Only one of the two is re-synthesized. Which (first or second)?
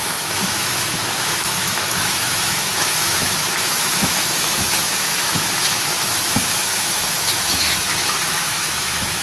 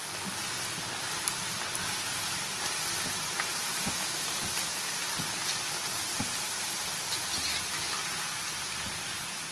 first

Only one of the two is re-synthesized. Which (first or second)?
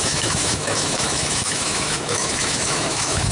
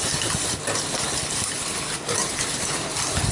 first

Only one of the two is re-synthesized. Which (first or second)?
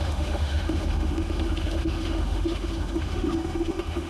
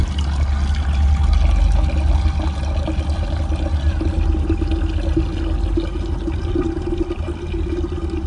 first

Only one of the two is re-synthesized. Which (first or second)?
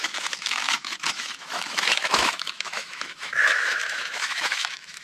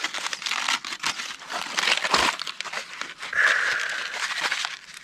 first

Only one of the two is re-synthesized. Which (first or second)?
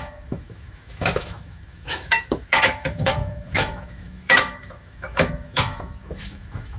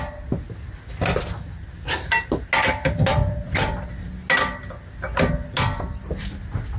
first